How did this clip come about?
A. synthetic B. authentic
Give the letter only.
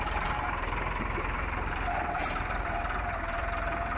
A